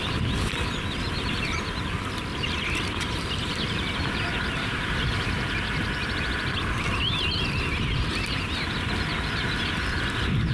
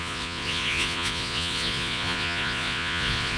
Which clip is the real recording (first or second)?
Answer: first